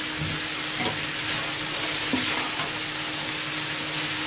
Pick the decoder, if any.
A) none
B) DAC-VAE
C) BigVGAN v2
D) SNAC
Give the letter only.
A